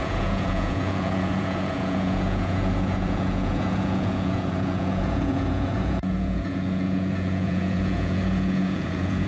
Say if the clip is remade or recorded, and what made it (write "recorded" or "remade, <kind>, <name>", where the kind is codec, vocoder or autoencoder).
remade, vocoder, Vocos